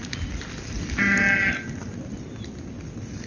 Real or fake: real